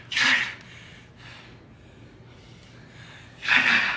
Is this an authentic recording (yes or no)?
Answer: yes